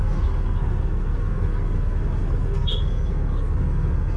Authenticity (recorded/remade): remade